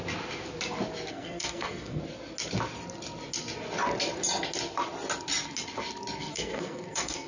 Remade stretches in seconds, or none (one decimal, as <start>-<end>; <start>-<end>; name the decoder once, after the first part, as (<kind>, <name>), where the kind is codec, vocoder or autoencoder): 1.1-2.0 (codec, SNAC); 6.2-7.3